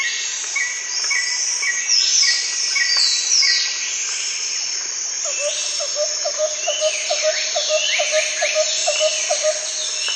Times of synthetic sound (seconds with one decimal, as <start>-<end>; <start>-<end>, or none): none